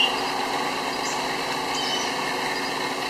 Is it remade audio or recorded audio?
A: recorded